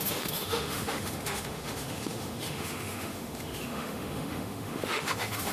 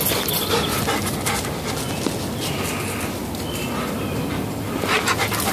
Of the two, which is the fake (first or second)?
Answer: first